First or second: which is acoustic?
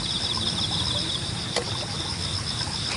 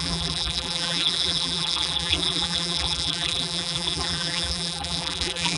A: first